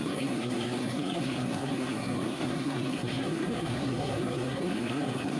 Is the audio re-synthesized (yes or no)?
yes